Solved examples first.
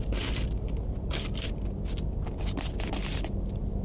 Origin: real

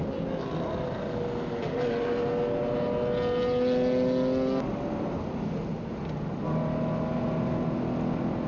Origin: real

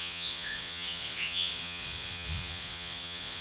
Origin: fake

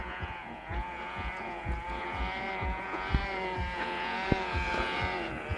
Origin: fake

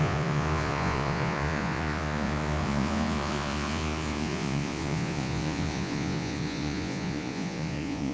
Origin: fake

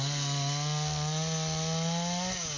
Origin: real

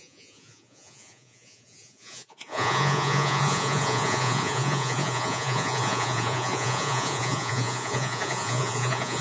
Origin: fake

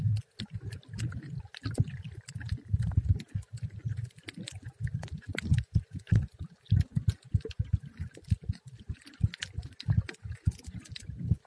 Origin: real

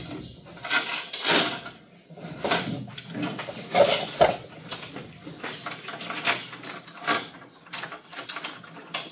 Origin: real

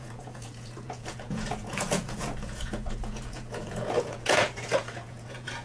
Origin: fake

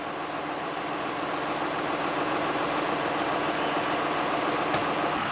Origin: real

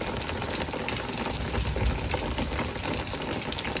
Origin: real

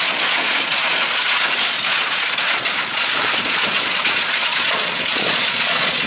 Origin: fake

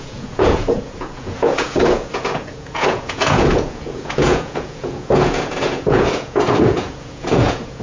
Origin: fake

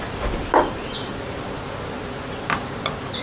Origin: real